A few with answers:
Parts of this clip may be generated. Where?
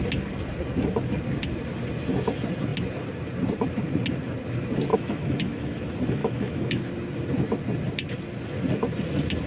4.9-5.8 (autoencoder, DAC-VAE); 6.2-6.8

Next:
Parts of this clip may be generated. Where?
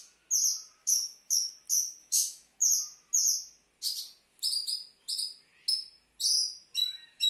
0.8-1.5 (autoencoder, DAC-VAE); 2.0-2.7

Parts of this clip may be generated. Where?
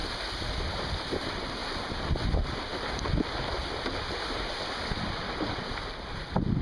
none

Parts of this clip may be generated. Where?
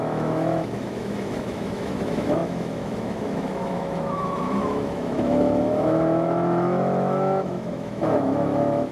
0.0-8.9 (autoencoder, DAC-VAE)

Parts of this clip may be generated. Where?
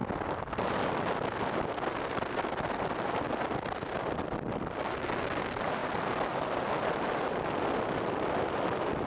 none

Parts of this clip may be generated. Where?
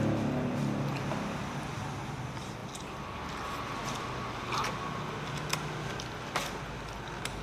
none